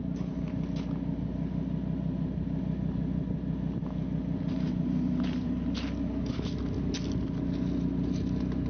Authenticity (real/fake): real